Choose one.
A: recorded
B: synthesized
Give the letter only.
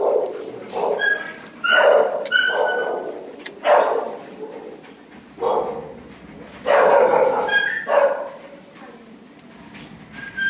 A